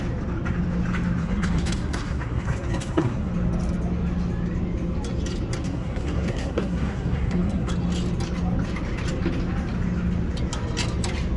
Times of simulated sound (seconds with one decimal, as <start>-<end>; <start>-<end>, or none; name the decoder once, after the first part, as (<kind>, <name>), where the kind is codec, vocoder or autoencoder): 1.2-3.3 (codec, SNAC); 5.6-7.7